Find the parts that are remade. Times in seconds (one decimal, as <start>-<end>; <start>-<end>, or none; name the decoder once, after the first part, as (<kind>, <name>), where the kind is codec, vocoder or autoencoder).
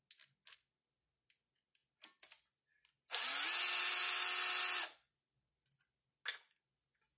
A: none